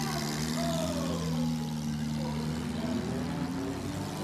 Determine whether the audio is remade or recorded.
recorded